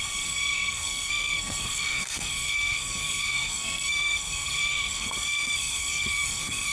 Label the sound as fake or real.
fake